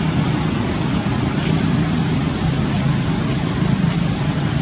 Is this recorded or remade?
recorded